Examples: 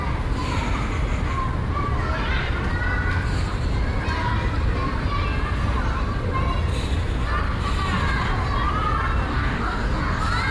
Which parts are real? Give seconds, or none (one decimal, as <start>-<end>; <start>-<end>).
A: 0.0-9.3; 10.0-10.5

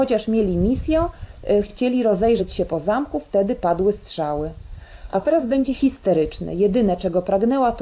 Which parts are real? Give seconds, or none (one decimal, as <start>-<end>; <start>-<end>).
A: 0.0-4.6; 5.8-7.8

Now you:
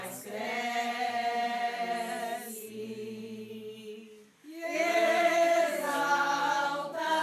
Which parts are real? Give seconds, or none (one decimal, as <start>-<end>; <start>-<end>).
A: 0.0-4.4